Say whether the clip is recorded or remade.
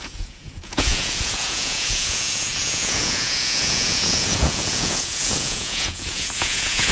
remade